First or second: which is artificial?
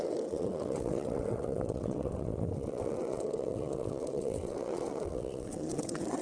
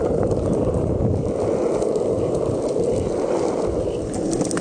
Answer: first